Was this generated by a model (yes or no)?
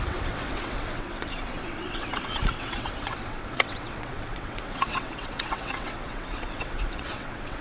yes